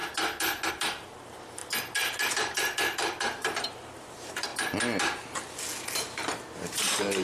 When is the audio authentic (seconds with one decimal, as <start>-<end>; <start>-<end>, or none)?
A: 0.0-0.7; 1.6-2.3; 4.5-5.8